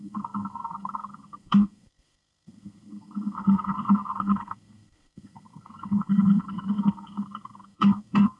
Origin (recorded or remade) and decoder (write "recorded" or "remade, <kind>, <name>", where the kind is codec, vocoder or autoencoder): remade, codec, SNAC